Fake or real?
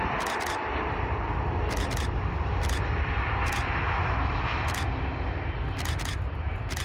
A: real